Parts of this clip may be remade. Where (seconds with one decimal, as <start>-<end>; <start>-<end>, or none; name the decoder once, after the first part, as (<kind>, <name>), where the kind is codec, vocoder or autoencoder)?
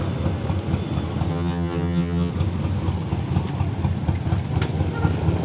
1.3-2.3 (vocoder, HiFi-GAN)